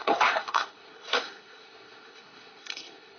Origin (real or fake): fake